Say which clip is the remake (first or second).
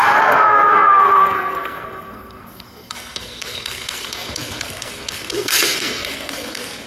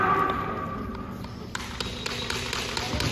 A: first